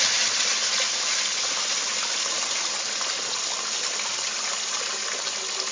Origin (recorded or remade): recorded